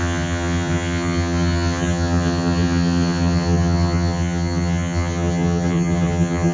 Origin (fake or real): fake